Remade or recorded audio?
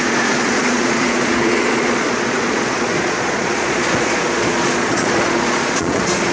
remade